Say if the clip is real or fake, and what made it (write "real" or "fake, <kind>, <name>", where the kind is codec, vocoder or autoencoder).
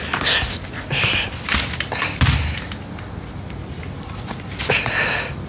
real